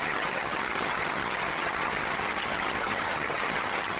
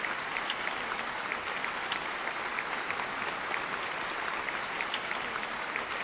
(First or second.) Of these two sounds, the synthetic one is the first